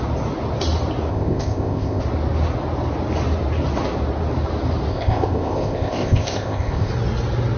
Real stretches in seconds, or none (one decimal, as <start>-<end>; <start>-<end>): 0.0-1.1; 2.0-4.9; 6.9-7.6